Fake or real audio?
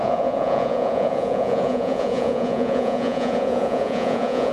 fake